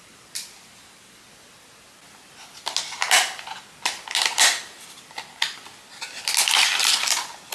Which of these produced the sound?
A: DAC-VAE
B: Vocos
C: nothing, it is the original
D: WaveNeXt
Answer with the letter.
C